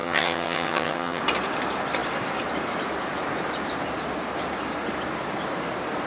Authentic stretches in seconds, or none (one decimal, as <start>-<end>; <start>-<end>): 1.2-6.1